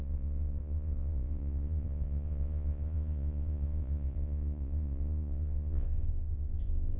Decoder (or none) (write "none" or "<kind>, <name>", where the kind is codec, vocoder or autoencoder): vocoder, Vocos